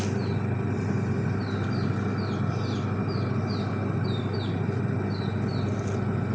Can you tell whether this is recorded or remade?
recorded